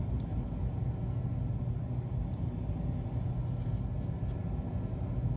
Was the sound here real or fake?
real